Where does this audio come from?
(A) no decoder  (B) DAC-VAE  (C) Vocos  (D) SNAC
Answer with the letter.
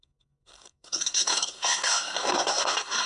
D